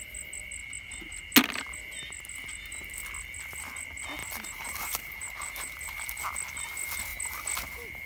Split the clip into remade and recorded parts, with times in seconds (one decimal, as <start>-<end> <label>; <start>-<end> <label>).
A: 0.0-4.2 recorded; 4.2-6.0 remade; 6.0-8.1 recorded